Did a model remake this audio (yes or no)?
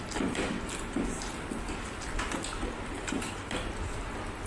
no